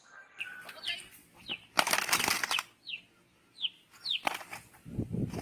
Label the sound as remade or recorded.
recorded